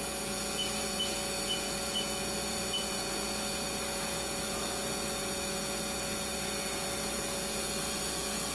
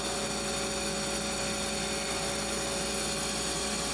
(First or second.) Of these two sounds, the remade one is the first